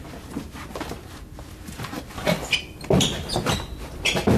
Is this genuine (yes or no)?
yes